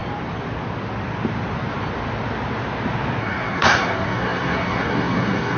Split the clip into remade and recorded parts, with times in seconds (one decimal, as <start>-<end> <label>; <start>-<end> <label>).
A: 0.0-3.2 recorded; 3.2-5.6 remade